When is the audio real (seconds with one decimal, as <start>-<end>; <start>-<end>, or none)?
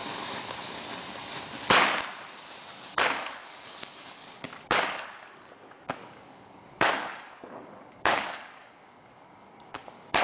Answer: 0.0-2.7